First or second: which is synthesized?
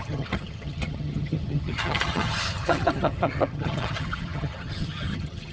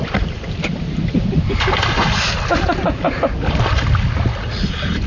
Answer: first